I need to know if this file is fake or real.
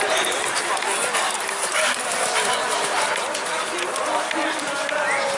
real